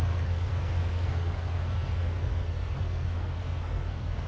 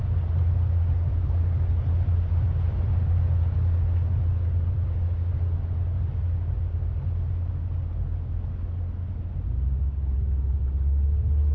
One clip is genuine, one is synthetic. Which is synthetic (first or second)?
first